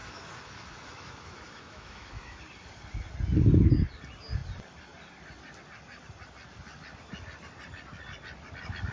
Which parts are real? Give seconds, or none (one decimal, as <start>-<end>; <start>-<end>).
2.4-8.9